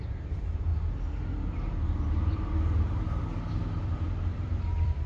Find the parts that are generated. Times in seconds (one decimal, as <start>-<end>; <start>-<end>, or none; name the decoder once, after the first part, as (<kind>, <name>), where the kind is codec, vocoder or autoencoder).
0.0-0.7 (vocoder, BigVGAN v2); 3.8-5.1